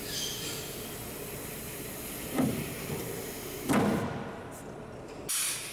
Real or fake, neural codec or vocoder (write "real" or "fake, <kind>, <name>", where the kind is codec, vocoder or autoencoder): real